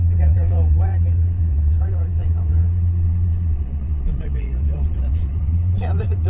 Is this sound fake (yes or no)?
yes